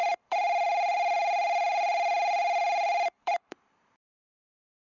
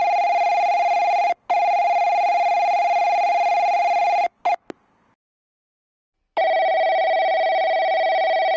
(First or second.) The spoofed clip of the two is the first